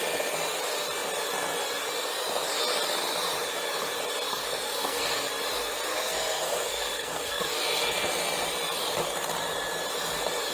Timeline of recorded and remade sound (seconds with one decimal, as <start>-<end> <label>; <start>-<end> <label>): 0.0-4.3 recorded; 4.3-5.3 remade; 5.3-5.9 recorded; 5.9-8.1 remade; 8.1-10.5 recorded